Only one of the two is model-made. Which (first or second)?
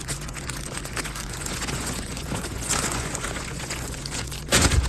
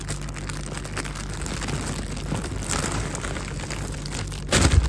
first